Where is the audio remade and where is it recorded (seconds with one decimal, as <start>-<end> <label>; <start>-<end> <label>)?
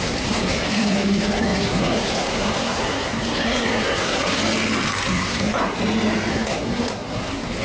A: 0.0-4.4 remade; 4.4-5.1 recorded; 5.1-5.8 remade; 5.8-6.3 recorded; 6.3-7.6 remade